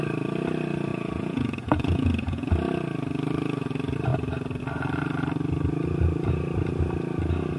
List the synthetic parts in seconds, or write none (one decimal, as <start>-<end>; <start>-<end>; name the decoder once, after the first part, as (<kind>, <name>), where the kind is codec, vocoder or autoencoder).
0.9-2.5 (vocoder, Vocos)